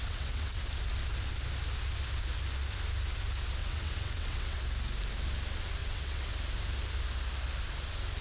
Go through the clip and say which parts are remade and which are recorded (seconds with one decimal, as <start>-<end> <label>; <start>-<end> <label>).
0.0-0.6 remade; 0.6-3.6 recorded; 3.6-4.6 remade; 4.6-5.8 recorded; 5.8-6.3 remade; 6.3-8.2 recorded

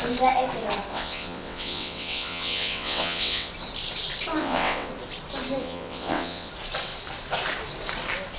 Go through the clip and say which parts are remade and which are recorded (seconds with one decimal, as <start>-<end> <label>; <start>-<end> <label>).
0.0-0.9 recorded; 0.9-3.5 remade; 3.5-4.4 recorded; 4.4-4.9 remade; 4.9-5.6 recorded; 5.6-6.5 remade; 6.5-8.4 recorded

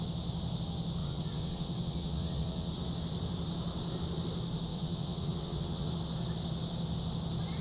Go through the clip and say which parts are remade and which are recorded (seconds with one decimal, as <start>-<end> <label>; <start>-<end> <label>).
0.0-1.0 recorded; 1.0-2.7 remade; 2.7-4.7 recorded; 4.7-5.9 remade; 5.9-7.6 recorded

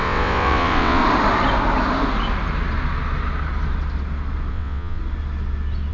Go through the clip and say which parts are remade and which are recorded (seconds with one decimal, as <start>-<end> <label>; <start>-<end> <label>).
0.0-1.0 remade; 1.0-4.5 recorded; 4.5-5.0 remade; 5.0-5.9 recorded